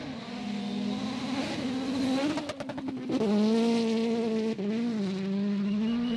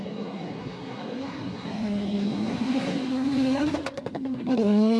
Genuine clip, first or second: first